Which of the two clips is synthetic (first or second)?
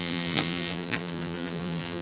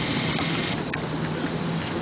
first